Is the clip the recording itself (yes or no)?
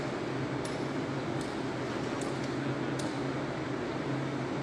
yes